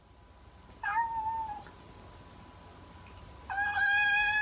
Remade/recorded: recorded